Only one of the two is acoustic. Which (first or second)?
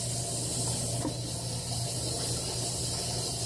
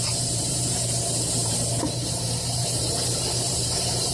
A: first